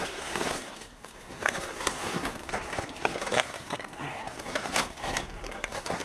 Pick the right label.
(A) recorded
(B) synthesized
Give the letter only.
B